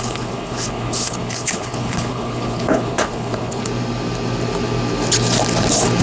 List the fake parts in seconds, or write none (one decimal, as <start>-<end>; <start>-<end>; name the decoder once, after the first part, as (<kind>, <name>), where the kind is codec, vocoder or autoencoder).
0.0-3.6 (codec, HILCodec)